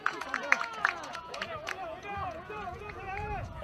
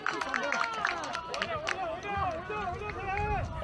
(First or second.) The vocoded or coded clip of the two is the first